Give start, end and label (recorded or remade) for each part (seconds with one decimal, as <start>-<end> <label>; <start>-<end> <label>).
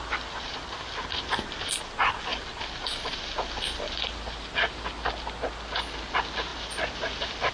0.0-7.5 recorded